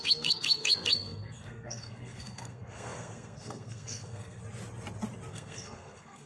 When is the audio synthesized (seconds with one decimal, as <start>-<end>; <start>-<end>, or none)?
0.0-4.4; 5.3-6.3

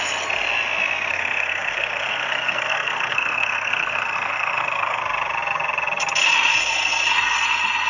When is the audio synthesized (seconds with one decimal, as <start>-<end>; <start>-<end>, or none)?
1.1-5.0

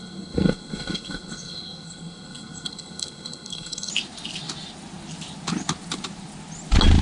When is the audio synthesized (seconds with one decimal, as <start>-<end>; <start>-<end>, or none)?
0.0-3.9

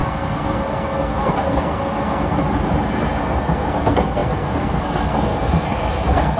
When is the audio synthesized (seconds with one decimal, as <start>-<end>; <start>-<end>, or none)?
0.0-2.4; 3.2-6.4

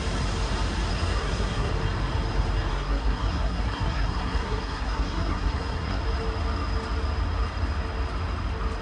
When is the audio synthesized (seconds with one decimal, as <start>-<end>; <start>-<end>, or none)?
0.9-1.7; 2.7-6.0

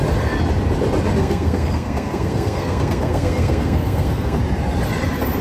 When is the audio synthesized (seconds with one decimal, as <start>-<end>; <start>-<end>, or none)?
1.2-4.4

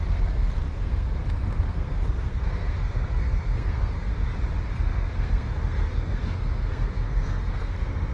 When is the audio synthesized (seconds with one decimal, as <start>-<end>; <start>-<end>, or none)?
0.0-4.1; 4.7-8.1